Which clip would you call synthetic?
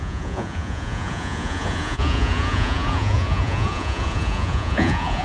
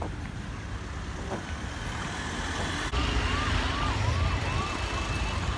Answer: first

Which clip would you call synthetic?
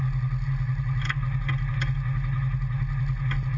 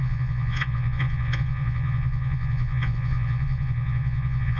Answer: second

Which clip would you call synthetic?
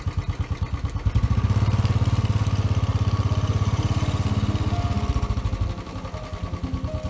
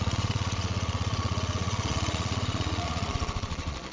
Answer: second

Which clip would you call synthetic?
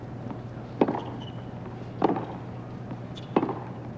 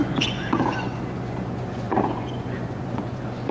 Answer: second